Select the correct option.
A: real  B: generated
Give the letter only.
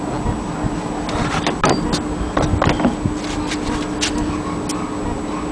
A